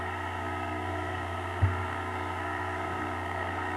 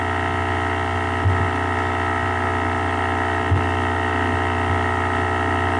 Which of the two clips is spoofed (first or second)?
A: first